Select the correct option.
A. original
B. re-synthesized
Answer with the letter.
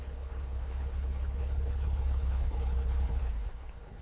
B